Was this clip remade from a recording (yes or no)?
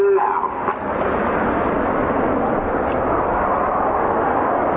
no